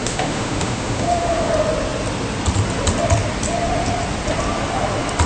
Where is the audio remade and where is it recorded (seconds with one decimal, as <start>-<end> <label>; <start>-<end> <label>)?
0.0-1.5 remade; 1.5-5.3 recorded